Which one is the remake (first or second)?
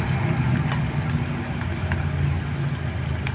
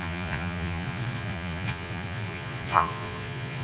second